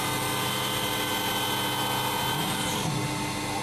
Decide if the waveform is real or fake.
real